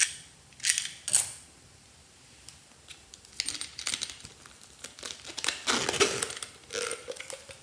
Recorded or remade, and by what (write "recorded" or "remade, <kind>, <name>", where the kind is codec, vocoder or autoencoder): recorded